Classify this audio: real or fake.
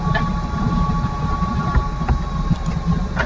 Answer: real